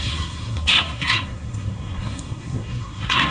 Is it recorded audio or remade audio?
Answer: remade